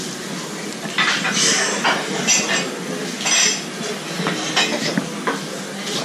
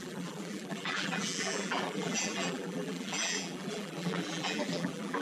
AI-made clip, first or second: second